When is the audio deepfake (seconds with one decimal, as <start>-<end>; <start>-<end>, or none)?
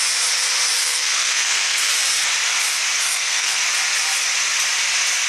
0.8-1.9; 3.0-3.6